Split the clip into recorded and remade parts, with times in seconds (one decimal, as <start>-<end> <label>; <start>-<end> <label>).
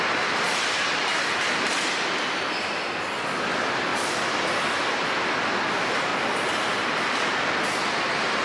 0.0-8.4 recorded